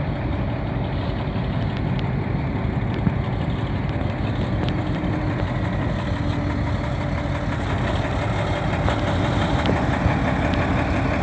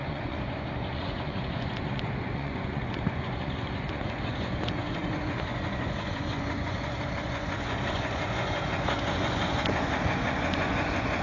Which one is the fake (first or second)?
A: second